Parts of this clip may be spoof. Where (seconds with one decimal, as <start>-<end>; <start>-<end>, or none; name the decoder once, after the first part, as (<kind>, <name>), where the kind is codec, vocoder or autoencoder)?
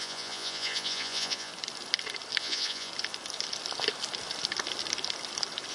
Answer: 0.0-1.5 (vocoder, Vocos); 2.4-2.9